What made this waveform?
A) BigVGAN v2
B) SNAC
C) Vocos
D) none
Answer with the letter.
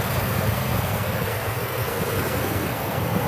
B